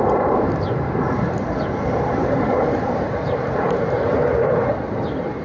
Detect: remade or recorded remade